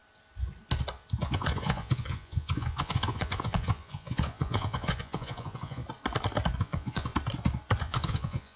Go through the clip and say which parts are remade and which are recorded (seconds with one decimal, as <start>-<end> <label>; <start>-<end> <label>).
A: 0.0-1.2 recorded; 1.2-5.8 remade; 5.8-6.6 recorded; 6.6-7.1 remade; 7.1-7.8 recorded; 7.8-8.6 remade